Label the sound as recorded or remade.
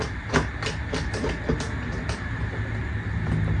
recorded